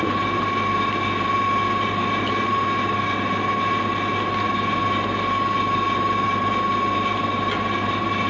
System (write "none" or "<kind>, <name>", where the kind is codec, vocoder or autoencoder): none